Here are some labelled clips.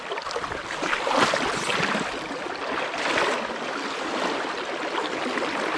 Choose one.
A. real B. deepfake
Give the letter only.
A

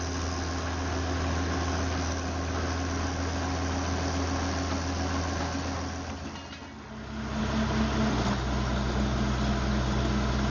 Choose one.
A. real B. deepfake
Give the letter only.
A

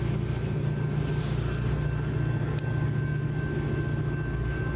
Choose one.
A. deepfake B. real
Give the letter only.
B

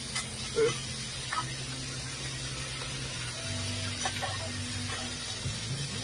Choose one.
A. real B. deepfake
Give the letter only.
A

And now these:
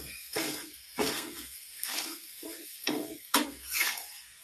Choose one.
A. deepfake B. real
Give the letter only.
A